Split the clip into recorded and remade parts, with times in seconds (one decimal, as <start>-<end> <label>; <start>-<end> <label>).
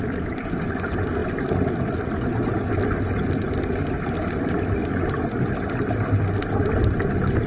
0.0-7.5 recorded